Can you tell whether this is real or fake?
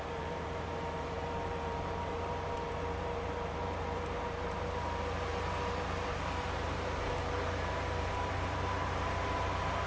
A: fake